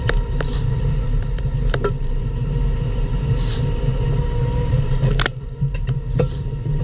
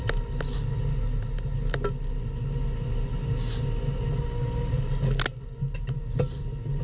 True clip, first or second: second